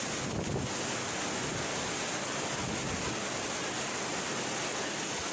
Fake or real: real